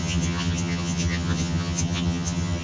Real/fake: fake